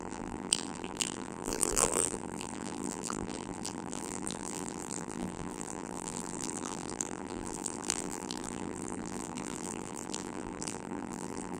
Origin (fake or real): fake